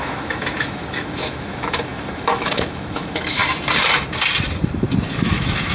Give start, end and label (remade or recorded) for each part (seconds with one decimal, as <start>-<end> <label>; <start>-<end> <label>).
0.0-3.4 remade; 3.4-5.1 recorded; 5.1-5.7 remade